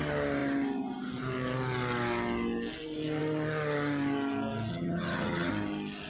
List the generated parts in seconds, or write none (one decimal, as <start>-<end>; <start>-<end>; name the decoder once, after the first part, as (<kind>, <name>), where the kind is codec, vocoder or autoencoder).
4.7-5.5 (vocoder, HiFi-GAN)

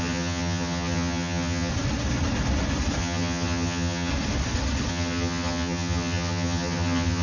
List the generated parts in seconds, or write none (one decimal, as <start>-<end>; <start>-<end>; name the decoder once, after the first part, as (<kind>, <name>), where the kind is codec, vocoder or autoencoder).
0.0-1.7 (vocoder, HiFi-GAN); 3.0-4.1; 4.9-7.2

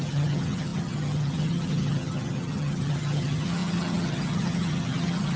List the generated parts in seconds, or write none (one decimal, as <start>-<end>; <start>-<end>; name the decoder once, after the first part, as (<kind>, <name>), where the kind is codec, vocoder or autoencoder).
0.0-5.4 (vocoder, HiFi-GAN)

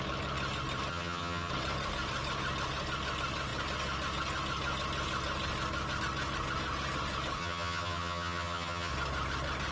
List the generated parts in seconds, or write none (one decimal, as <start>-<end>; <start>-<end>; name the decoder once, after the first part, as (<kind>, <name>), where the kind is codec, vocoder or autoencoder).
0.9-1.5 (vocoder, HiFi-GAN); 7.4-8.9

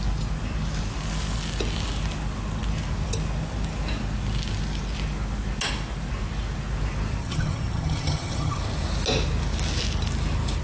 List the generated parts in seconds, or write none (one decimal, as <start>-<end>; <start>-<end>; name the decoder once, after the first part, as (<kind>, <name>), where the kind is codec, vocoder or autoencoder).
7.2-8.6 (vocoder, HiFi-GAN)

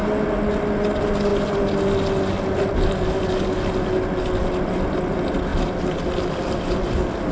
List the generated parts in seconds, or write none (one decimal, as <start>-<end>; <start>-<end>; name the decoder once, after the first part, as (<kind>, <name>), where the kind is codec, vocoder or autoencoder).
none

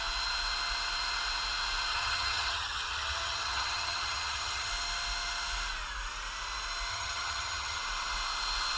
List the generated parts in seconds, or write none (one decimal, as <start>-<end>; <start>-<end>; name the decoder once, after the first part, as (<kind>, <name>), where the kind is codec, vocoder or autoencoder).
1.9-4.7 (vocoder, HiFi-GAN); 6.9-7.8

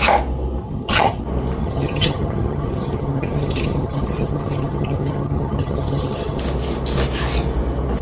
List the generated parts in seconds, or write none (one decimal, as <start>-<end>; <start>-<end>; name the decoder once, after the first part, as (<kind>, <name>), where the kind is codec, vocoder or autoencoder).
0.6-1.2 (vocoder, HiFi-GAN); 1.6-6.4